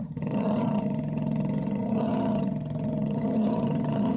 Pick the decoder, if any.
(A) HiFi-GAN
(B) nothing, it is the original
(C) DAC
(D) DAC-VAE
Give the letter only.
A